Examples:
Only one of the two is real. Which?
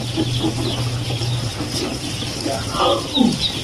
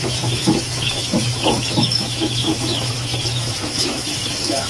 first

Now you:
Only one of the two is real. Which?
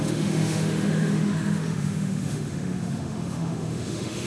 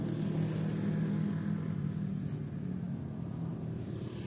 second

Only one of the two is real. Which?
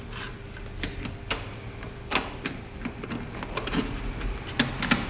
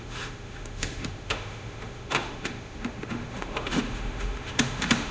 first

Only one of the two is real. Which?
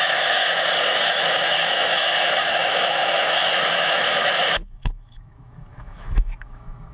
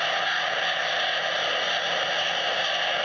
second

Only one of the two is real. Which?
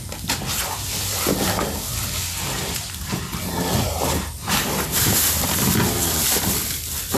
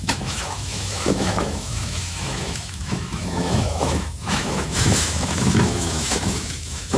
first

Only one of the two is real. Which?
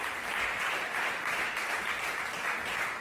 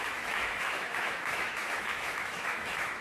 first